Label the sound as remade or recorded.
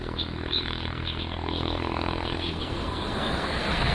remade